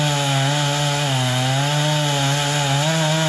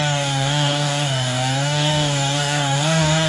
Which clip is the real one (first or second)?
first